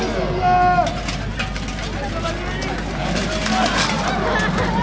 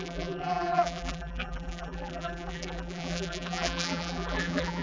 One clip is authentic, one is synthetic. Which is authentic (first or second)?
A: first